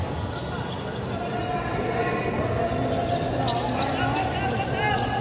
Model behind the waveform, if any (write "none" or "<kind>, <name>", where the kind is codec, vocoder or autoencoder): none